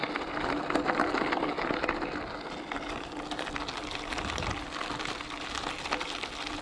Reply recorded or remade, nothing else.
recorded